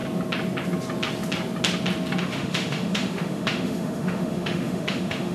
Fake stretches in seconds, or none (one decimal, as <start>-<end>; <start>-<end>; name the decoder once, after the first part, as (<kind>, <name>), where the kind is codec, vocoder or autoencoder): 2.2-5.3 (autoencoder, DAC-VAE)